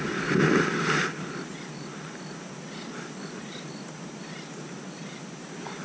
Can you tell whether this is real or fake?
real